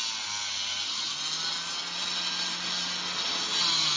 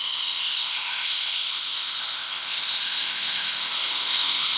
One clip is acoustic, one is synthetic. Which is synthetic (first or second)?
second